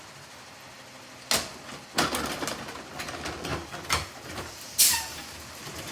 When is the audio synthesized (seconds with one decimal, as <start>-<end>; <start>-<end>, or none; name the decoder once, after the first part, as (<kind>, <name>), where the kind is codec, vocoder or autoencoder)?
none